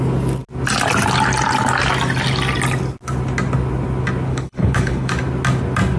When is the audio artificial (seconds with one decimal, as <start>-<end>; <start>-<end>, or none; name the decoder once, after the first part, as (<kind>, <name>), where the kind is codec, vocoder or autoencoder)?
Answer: 4.3-5.1 (codec, HILCodec)